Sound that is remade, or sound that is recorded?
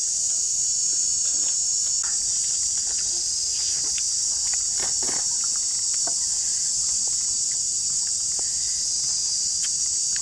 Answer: recorded